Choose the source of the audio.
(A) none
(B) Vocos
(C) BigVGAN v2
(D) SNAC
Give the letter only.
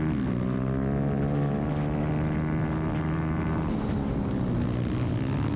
A